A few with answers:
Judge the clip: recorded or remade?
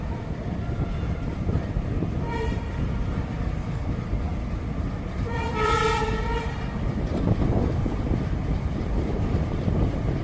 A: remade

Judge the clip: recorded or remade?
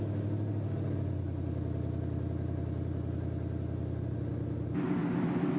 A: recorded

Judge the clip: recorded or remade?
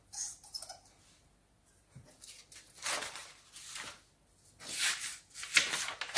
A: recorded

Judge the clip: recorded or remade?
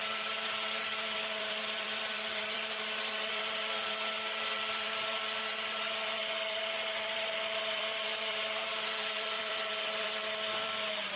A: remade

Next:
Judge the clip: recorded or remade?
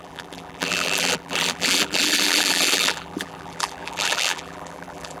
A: remade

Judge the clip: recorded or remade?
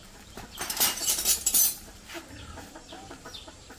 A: remade